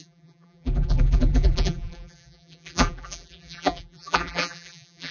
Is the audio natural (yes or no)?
no